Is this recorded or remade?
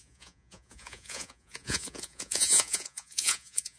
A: remade